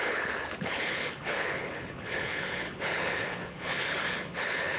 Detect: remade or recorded remade